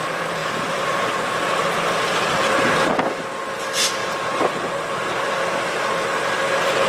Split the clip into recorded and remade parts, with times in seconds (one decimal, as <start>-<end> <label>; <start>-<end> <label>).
0.0-0.4 recorded; 0.4-1.1 remade; 1.1-4.0 recorded; 4.0-5.0 remade; 5.0-6.9 recorded